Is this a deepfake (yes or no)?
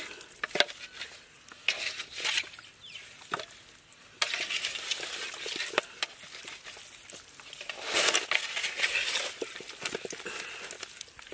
no